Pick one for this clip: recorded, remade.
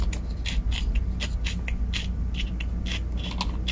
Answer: recorded